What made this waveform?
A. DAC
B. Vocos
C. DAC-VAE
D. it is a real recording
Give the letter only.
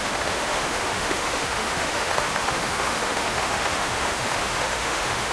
C